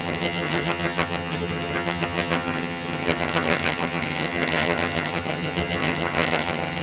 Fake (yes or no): yes